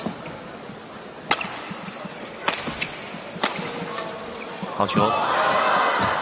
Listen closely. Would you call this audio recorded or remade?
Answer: recorded